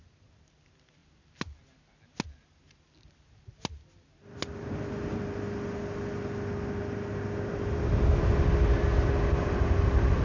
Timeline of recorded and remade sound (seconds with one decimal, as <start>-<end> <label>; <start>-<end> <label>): 0.0-10.2 recorded